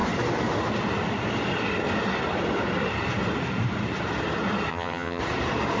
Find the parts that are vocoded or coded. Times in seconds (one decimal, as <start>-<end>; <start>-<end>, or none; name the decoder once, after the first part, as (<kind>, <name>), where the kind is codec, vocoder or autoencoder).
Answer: 4.7-5.2 (vocoder, HiFi-GAN)